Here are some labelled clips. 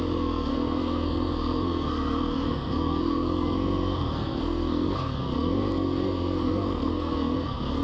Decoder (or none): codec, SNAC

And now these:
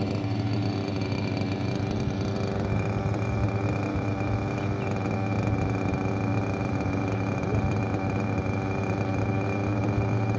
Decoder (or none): none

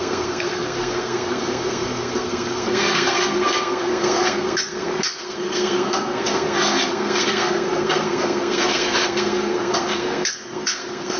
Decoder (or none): codec, SNAC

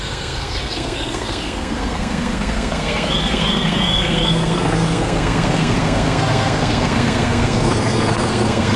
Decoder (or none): codec, SNAC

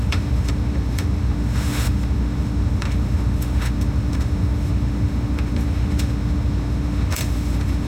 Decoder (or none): autoencoder, DAC-VAE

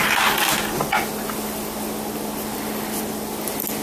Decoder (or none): none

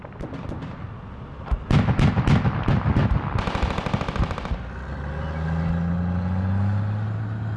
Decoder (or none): none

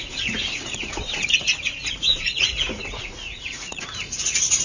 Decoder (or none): vocoder, Vocos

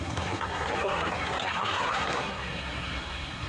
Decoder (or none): codec, SNAC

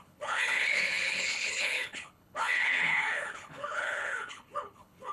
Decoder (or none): codec, HILCodec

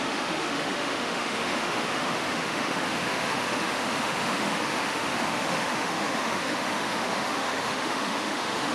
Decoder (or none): autoencoder, DAC-VAE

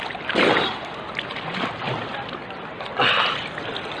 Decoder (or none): none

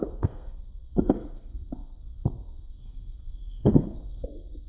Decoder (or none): codec, SNAC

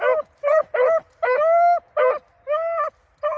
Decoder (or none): none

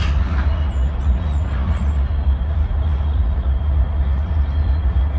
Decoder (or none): vocoder, Vocos